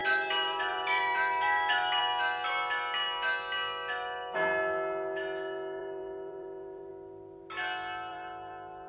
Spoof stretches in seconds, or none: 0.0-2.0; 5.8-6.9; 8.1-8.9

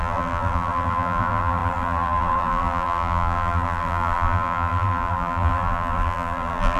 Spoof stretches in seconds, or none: 0.0-6.8

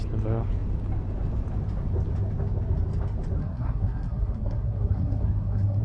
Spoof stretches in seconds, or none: 3.4-5.8

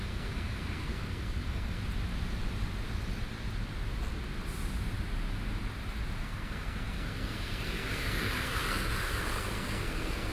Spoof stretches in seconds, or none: 0.0-1.8; 6.2-10.3